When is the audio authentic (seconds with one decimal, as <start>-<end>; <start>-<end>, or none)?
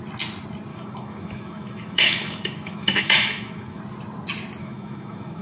0.0-0.7; 3.8-4.6